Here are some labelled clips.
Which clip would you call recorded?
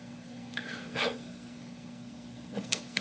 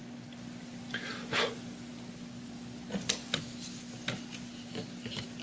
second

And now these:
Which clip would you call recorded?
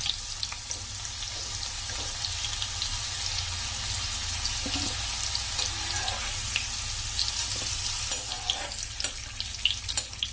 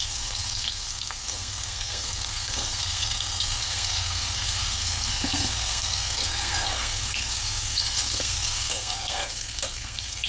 first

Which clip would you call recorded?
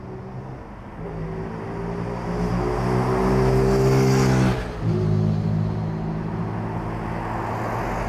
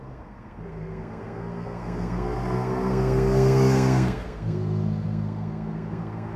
first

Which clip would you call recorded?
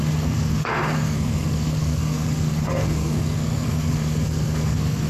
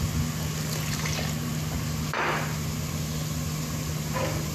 second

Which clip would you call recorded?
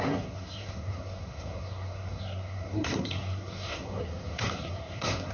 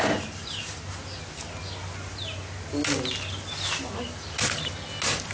second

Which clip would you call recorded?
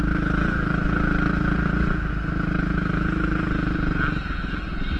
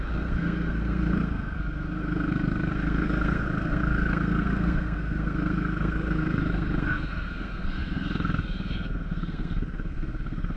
first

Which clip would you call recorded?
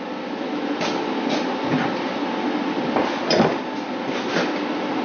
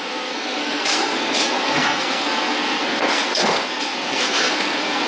first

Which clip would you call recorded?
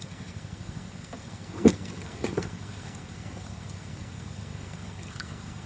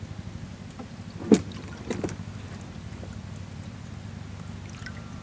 second